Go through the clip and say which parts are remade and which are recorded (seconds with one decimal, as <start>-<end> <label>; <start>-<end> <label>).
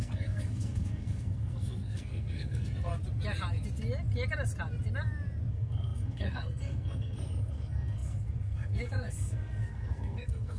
0.0-2.9 remade; 2.9-5.5 recorded; 5.5-10.6 remade